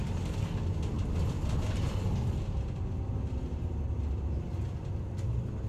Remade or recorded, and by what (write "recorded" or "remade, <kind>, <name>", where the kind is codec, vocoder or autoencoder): recorded